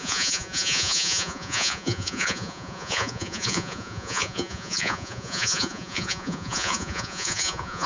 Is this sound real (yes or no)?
no